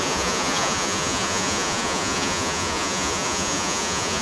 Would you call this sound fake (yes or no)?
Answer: yes